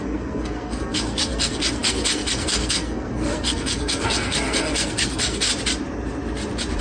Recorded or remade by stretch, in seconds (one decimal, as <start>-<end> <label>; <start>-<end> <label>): 0.0-5.5 remade; 5.5-6.8 recorded